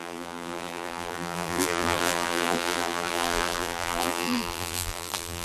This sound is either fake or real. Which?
fake